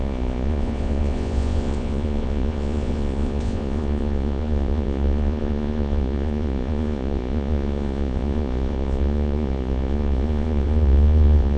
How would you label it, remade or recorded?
remade